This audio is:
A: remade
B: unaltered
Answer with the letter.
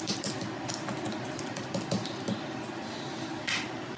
A